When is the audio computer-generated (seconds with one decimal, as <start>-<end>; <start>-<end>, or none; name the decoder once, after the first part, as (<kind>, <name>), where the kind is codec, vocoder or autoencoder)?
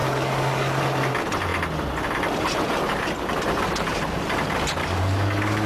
0.0-0.8 (codec, DAC); 4.8-5.7